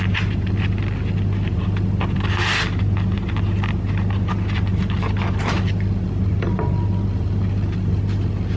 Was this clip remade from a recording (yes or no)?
no